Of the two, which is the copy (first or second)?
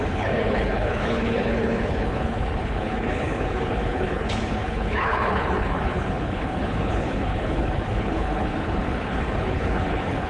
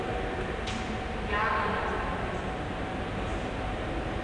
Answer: first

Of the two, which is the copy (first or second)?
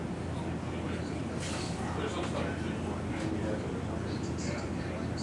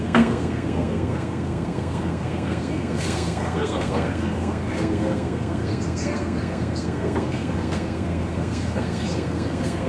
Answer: second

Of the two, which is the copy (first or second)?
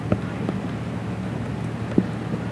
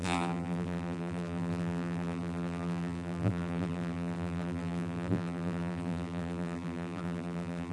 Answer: second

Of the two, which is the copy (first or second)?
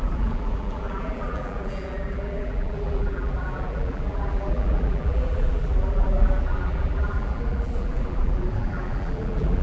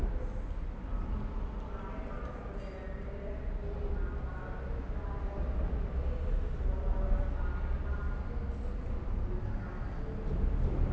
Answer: first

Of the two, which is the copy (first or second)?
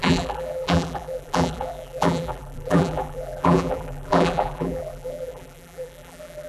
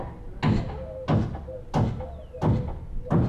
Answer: first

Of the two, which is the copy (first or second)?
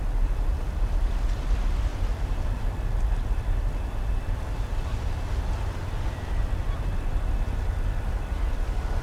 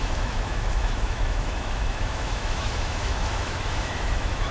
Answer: second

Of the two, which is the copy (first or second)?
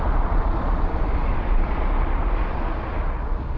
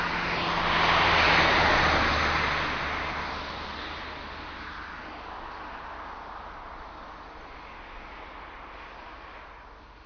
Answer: first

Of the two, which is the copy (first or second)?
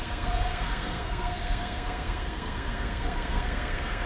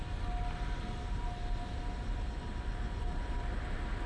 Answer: first